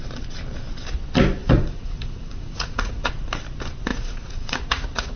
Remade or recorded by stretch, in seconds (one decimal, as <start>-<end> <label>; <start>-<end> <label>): 0.0-1.4 recorded; 1.4-3.1 remade; 3.1-3.9 recorded; 3.9-5.2 remade